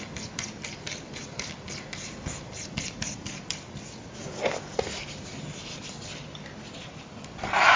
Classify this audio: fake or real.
real